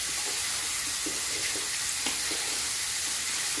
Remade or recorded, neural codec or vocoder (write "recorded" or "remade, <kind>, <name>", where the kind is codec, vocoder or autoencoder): recorded